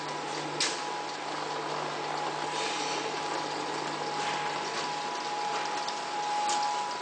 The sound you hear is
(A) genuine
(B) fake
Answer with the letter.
A